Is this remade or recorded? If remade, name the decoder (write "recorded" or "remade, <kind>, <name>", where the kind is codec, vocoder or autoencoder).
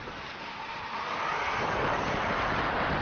recorded